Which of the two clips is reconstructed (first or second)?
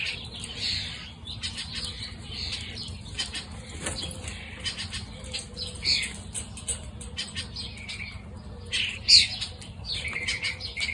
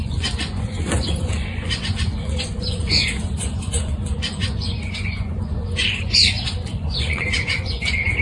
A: second